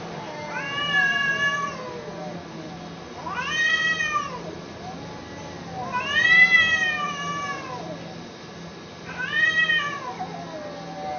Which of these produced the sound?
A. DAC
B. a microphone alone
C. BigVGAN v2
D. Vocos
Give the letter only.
B